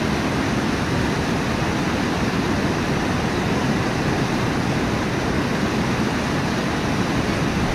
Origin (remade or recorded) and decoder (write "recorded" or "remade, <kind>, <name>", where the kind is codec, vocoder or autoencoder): recorded